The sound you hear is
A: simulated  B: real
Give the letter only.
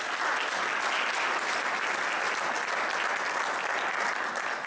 B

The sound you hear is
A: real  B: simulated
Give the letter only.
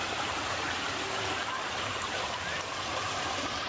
A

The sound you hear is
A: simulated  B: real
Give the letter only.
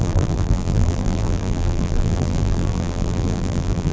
A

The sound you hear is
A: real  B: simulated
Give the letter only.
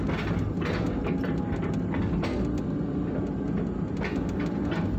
A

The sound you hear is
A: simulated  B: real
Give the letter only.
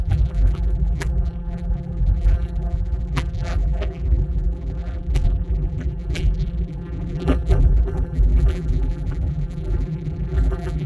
A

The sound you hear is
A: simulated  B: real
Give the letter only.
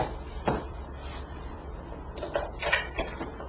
A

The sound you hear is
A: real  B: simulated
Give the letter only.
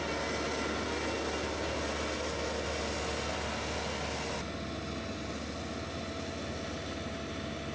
A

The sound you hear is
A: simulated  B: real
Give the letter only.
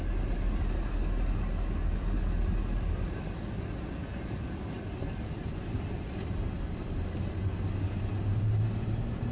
B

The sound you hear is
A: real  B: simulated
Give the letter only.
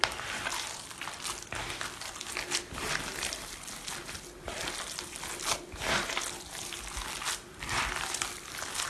B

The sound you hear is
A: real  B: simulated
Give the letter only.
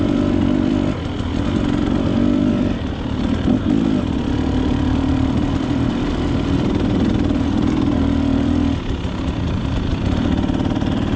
B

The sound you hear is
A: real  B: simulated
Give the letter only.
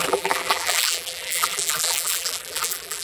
B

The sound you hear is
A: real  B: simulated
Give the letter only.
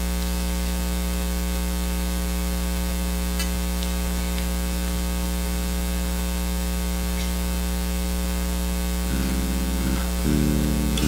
A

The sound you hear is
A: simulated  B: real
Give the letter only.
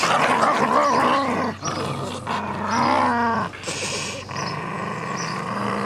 B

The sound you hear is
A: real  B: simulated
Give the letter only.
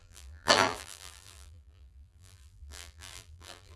B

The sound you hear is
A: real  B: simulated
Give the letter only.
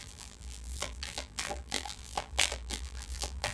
B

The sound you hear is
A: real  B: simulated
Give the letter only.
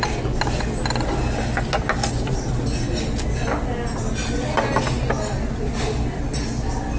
A